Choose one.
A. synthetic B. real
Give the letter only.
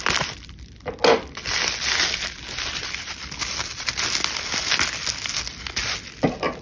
B